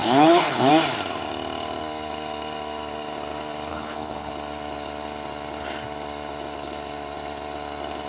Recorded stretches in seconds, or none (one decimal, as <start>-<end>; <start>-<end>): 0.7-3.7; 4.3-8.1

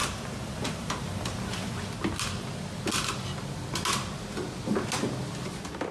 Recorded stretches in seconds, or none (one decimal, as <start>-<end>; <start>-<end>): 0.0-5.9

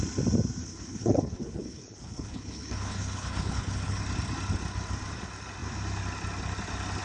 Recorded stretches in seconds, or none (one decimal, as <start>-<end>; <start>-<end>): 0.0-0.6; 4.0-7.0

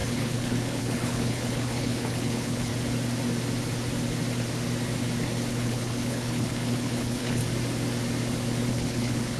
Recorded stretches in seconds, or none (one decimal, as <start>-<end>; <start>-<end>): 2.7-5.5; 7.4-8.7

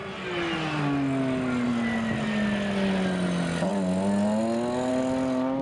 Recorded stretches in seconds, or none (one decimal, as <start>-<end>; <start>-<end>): 0.0-5.6